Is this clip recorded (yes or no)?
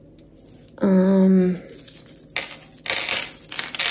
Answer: yes